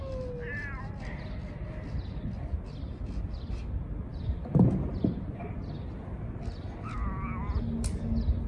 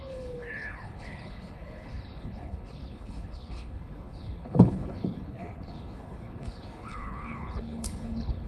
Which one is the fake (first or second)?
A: second